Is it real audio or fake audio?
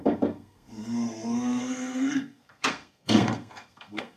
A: fake